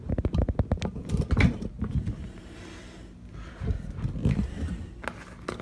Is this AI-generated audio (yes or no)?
no